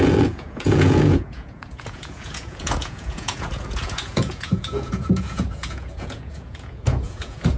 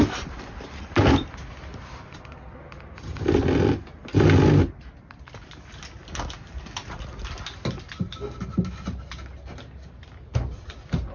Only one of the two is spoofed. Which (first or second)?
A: first